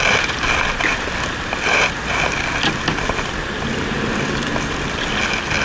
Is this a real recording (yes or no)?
yes